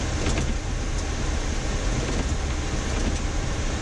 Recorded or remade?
recorded